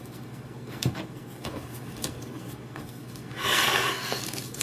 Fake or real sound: fake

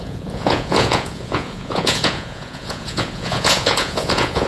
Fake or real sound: fake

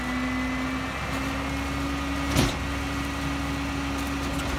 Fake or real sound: real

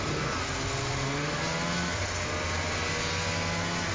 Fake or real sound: real